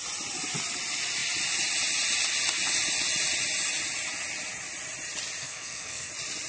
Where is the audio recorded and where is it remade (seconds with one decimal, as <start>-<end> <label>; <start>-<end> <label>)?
0.0-5.4 recorded; 5.4-6.1 remade; 6.1-6.5 recorded